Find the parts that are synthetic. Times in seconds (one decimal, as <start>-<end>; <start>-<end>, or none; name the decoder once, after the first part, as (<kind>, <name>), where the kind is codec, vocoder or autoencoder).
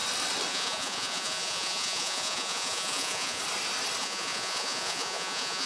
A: 0.5-3.4 (vocoder, Vocos); 4.0-5.7